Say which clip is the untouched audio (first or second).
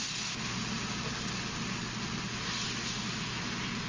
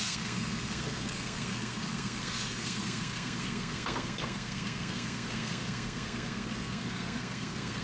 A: first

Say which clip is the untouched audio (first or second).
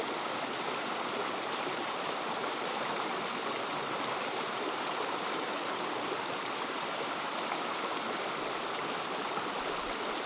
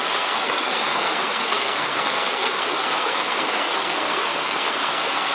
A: first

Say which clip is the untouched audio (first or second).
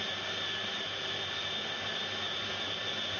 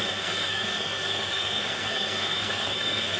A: first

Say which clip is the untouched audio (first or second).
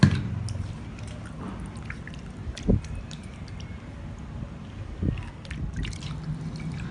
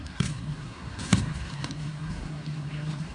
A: first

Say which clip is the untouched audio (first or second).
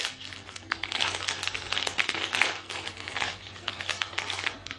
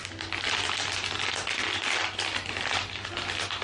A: second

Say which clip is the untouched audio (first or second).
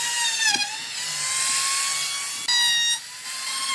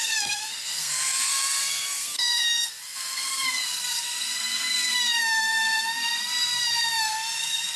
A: first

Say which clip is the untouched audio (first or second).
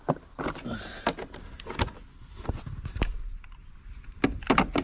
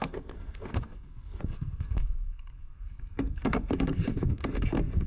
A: first